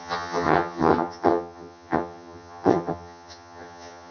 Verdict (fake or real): fake